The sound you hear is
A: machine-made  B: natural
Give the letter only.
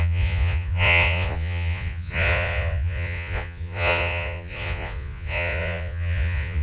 A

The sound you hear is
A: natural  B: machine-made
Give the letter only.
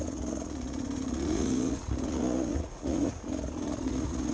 B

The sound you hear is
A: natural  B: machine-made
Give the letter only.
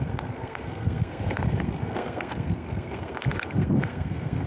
B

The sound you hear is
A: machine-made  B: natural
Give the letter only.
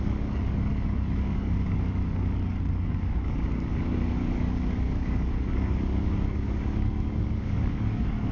A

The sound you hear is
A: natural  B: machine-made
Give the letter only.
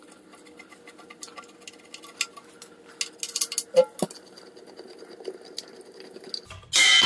A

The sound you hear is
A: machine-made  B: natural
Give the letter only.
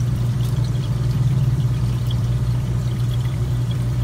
A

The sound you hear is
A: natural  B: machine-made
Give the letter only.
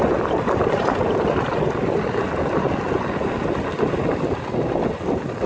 A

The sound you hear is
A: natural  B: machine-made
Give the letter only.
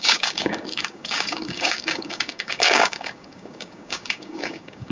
B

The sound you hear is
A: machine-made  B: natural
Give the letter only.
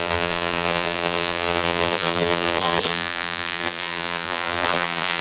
A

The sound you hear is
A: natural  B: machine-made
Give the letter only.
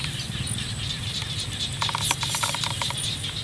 A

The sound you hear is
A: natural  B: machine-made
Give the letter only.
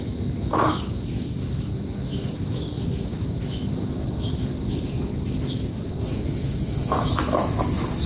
B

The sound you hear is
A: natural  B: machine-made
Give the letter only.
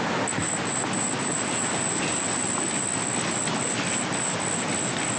A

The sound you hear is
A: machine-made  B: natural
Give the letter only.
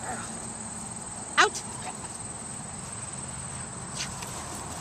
B